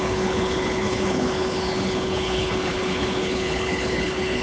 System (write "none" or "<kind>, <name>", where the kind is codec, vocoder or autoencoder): codec, HILCodec